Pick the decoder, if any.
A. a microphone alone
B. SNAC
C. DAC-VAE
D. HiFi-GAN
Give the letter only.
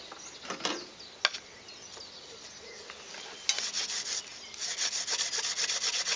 A